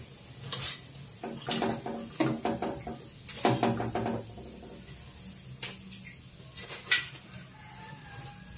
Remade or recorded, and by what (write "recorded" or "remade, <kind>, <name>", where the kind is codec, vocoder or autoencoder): recorded